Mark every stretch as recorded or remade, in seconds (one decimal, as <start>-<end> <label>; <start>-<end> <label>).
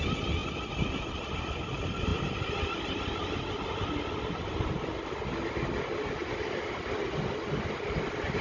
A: 0.0-8.4 recorded